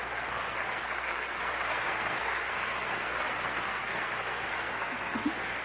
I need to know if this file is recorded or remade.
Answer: remade